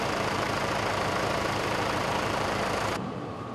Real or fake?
fake